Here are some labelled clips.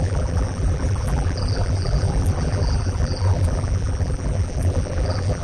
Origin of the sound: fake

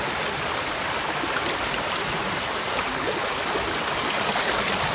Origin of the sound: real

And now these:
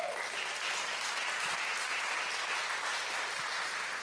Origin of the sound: real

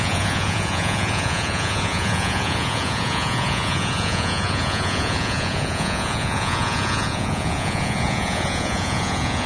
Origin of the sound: fake